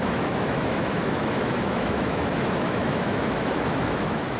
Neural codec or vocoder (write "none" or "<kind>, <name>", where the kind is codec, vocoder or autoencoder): autoencoder, DAC-VAE